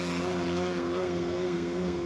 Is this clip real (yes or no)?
no